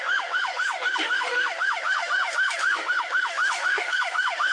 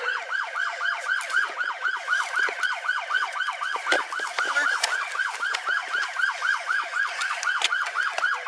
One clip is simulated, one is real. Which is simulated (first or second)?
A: first